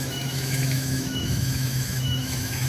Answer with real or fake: fake